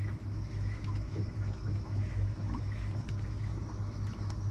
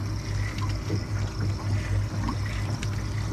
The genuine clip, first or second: second